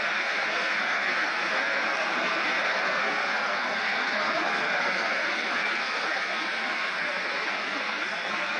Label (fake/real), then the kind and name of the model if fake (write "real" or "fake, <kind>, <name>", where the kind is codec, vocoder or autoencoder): fake, codec, SNAC